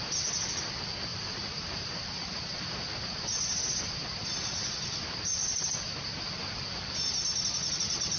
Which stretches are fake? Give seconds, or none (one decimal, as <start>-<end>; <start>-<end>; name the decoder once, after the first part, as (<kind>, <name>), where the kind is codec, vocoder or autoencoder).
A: 1.1-2.6 (vocoder, BigVGAN v2)